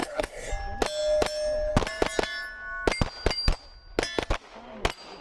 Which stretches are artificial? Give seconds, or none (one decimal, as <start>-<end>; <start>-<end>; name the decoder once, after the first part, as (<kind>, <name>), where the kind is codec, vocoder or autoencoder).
0.0-0.5 (codec, SNAC)